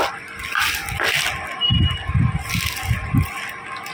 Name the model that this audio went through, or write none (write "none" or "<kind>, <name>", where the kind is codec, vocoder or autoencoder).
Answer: none